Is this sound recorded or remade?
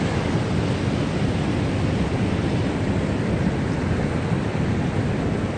recorded